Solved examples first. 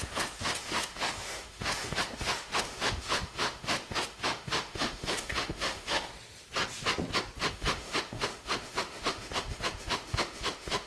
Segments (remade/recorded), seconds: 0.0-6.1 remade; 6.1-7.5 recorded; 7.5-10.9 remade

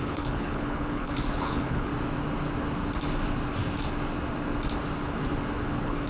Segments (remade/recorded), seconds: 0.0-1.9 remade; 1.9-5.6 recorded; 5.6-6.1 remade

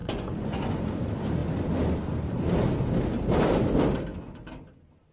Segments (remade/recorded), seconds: 0.0-0.8 remade; 0.8-5.1 recorded